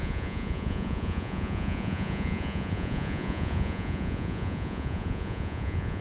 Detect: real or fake fake